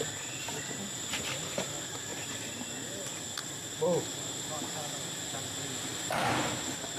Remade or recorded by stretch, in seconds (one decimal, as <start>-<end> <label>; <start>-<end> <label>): 0.0-2.1 recorded; 2.1-2.6 remade; 2.6-5.9 recorded; 5.9-6.4 remade; 6.4-7.0 recorded